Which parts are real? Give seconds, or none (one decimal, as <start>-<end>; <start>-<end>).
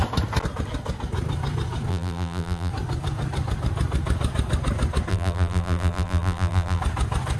0.0-1.9; 2.7-5.1; 6.8-7.4